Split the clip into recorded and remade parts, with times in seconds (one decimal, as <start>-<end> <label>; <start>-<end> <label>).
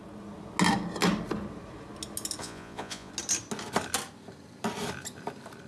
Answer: 0.0-2.4 recorded; 2.4-3.1 remade; 3.1-5.7 recorded